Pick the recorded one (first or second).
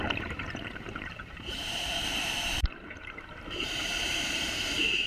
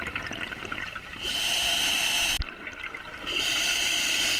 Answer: second